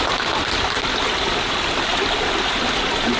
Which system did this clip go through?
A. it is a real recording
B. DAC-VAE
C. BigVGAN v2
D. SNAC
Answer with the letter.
A